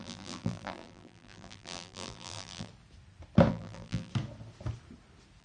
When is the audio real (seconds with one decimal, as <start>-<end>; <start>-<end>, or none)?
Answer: 2.7-3.5; 4.1-5.4